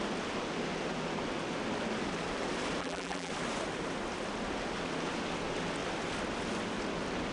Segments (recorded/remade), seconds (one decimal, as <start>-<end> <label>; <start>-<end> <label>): 0.0-2.8 recorded; 2.8-3.3 remade; 3.3-7.3 recorded